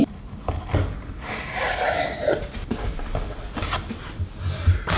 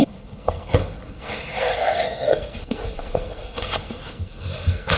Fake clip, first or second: second